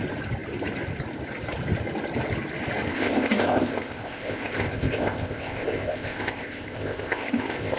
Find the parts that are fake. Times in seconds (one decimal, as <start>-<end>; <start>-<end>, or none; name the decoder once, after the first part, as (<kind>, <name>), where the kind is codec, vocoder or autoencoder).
2.9-7.8 (codec, ZipCodec)